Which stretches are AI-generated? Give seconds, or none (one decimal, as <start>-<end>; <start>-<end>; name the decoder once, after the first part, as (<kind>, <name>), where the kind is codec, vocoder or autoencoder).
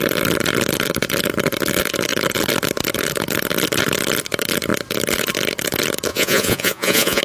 6.1-7.2 (vocoder, Vocos)